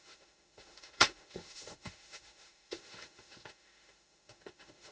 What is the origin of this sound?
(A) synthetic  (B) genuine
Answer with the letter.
A